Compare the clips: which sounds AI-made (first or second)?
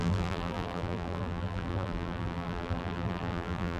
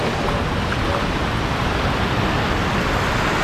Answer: first